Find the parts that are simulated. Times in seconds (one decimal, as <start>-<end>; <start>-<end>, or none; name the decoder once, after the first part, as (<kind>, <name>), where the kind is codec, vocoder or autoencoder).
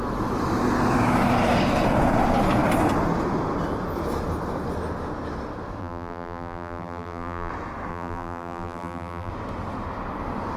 5.8-7.5 (vocoder, BigVGAN v2); 7.9-9.3